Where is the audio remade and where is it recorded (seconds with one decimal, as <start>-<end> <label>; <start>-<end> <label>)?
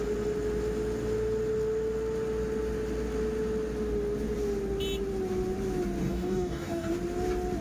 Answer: 0.0-6.0 recorded; 6.0-6.9 remade; 6.9-7.6 recorded